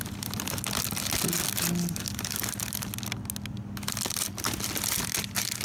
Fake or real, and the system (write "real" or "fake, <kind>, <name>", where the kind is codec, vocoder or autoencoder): real